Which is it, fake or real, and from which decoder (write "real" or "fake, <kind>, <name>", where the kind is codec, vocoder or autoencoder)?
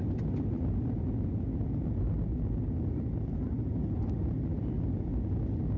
real